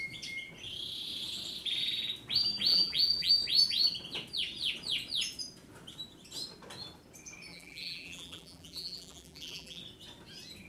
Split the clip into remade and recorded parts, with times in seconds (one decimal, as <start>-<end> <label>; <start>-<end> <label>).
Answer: 0.0-2.7 recorded; 2.7-3.3 remade; 3.3-7.5 recorded; 7.5-9.8 remade; 9.8-10.7 recorded